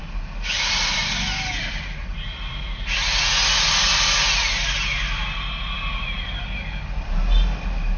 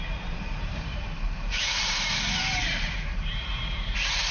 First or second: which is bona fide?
first